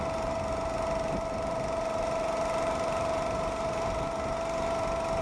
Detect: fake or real real